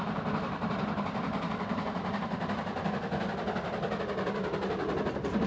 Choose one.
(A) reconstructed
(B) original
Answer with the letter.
B